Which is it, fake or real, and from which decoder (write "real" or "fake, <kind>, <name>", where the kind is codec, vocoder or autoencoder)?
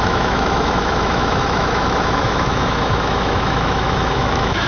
fake, autoencoder, DAC-VAE